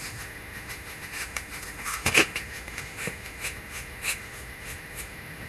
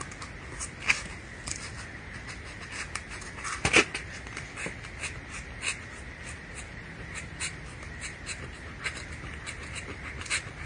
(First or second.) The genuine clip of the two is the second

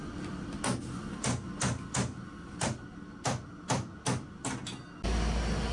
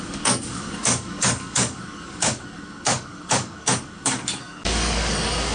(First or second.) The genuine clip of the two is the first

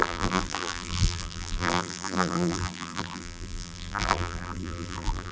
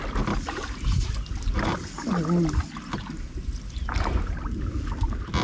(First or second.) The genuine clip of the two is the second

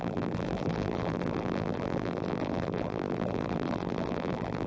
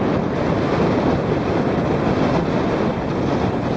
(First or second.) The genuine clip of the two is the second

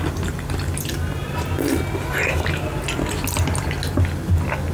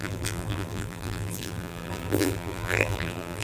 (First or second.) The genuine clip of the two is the first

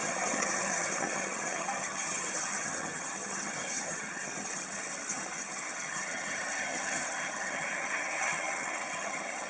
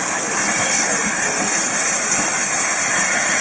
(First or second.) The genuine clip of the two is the second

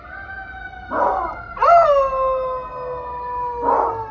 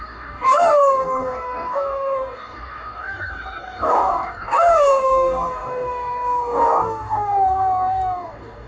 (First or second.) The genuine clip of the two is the first